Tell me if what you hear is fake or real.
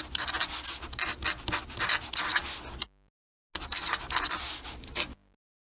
real